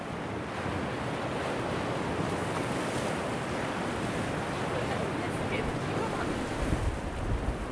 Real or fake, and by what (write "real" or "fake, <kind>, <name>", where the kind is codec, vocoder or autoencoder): real